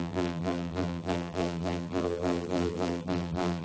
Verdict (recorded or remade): remade